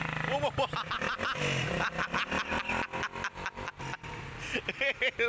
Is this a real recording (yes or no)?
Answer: yes